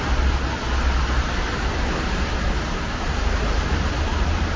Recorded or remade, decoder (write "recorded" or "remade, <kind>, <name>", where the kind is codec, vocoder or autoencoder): recorded